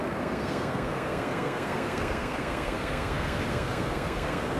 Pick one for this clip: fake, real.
fake